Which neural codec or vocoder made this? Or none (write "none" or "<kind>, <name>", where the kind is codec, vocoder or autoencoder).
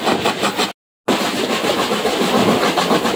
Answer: none